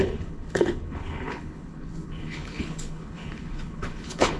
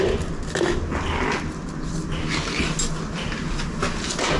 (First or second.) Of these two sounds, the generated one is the first